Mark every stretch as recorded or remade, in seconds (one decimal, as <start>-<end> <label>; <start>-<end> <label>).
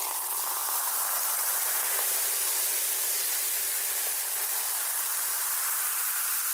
0.0-0.6 recorded; 0.6-4.0 remade; 4.0-5.1 recorded; 5.1-5.8 remade; 5.8-6.5 recorded